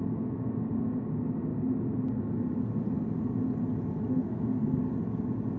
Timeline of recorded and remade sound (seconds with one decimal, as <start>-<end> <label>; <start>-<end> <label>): 0.0-4.1 recorded; 4.1-4.8 remade; 4.8-5.6 recorded